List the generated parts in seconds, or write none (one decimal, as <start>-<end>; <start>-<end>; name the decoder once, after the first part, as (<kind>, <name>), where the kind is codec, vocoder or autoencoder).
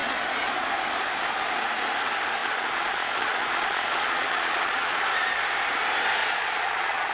2.4-5.0 (vocoder, Vocos); 6.2-7.1